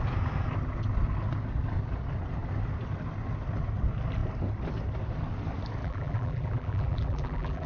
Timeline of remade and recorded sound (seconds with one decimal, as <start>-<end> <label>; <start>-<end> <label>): 0.0-5.8 recorded; 5.8-7.7 remade